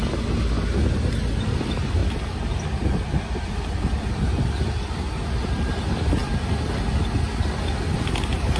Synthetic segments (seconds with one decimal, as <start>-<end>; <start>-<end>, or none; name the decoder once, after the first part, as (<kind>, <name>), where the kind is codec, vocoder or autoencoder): none